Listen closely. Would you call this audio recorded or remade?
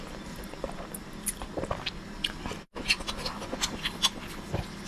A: recorded